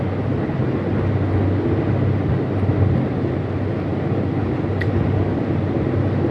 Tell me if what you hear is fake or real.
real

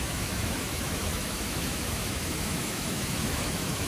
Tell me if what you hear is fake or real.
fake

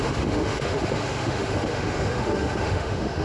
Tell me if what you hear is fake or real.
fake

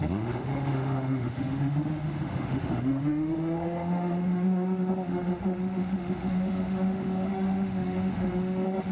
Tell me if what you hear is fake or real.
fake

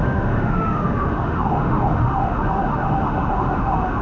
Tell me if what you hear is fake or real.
fake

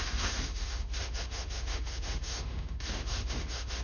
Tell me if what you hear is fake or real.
fake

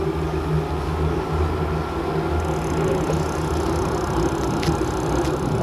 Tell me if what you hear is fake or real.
real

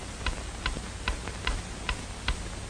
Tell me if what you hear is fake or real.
real